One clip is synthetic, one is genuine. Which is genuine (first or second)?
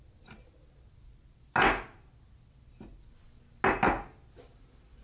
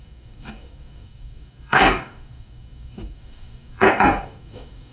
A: first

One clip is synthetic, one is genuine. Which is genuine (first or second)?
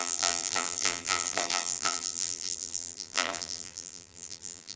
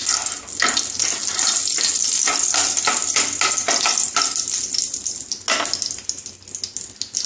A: second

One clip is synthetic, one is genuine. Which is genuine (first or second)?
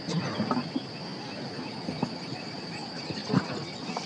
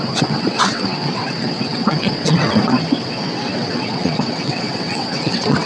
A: first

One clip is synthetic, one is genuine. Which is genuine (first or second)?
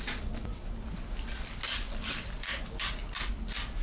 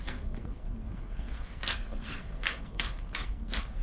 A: first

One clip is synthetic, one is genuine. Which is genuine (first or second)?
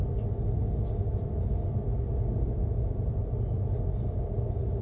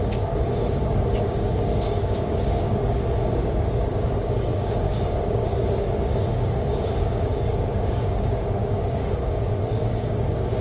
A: first